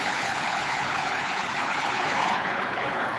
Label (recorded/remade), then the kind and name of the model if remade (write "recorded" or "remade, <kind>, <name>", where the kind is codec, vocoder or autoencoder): remade, codec, HILCodec